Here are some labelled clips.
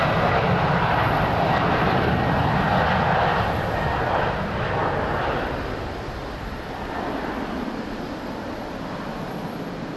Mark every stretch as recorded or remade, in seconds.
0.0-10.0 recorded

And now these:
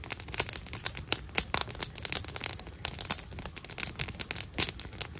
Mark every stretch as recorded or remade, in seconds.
0.0-5.2 recorded

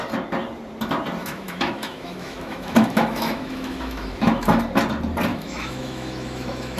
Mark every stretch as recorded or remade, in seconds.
0.0-1.2 recorded; 1.2-4.6 remade; 4.6-5.3 recorded; 5.3-6.8 remade

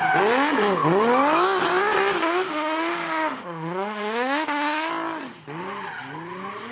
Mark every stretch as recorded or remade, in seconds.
0.0-2.2 recorded; 2.2-4.9 remade; 4.9-6.7 recorded

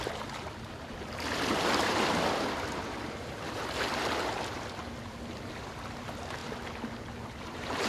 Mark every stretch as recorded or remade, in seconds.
0.0-7.9 recorded